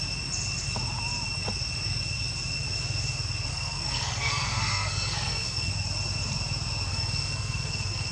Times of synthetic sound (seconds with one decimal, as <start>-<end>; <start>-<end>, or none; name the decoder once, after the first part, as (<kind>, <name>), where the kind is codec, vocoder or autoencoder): 3.5-5.7 (codec, SNAC); 6.9-8.1